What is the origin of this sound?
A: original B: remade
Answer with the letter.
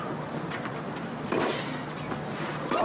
A